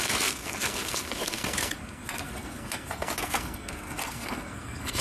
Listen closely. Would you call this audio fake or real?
fake